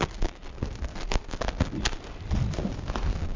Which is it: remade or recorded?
recorded